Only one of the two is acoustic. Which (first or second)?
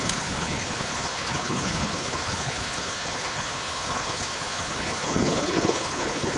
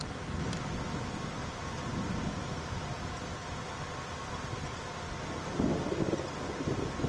second